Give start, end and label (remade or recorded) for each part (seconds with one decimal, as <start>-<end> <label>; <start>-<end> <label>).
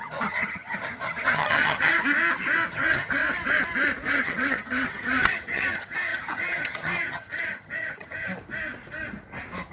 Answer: 0.0-1.9 remade; 1.9-2.7 recorded; 2.7-3.2 remade; 3.2-4.1 recorded; 4.1-8.3 remade; 8.3-9.7 recorded